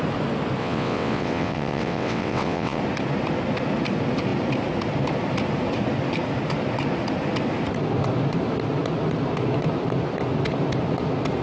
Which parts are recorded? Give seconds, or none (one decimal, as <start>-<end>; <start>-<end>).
0.0-0.6; 2.8-11.4